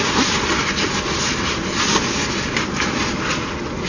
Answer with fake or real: real